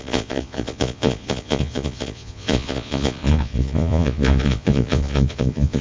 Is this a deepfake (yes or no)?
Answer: yes